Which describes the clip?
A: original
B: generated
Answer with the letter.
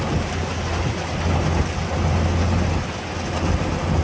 A